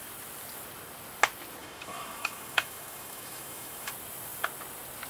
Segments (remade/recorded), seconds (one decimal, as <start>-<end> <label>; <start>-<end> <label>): 0.0-1.6 recorded; 1.6-3.9 remade; 3.9-5.1 recorded

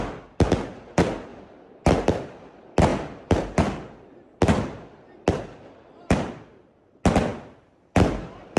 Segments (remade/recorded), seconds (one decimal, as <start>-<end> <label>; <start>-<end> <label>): 0.0-8.6 recorded

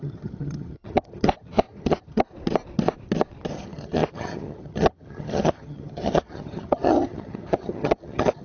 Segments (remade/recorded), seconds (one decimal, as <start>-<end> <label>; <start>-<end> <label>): 0.0-2.2 remade; 2.2-3.5 recorded; 3.5-8.4 remade

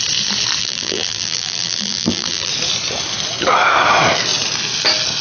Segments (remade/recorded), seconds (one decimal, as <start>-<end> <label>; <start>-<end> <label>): 0.0-0.6 recorded; 0.6-2.5 remade; 2.5-5.2 recorded

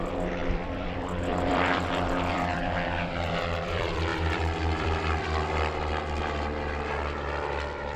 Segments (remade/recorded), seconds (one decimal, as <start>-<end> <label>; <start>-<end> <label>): 0.0-8.0 remade

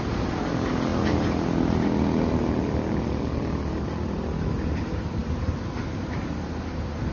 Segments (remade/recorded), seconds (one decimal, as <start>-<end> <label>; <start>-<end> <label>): 0.0-7.1 recorded

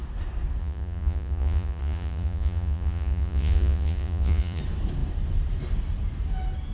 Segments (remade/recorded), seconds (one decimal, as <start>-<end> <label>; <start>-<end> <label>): 0.0-0.6 recorded; 0.6-4.6 remade; 4.6-6.7 recorded